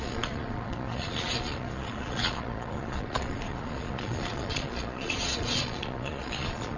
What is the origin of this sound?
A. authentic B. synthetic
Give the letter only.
B